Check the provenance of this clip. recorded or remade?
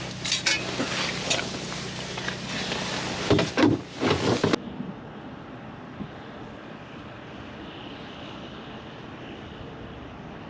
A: recorded